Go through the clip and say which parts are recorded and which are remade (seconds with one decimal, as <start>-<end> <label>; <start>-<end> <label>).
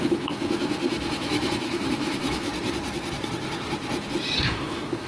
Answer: 0.0-2.5 remade; 2.5-4.4 recorded; 4.4-5.1 remade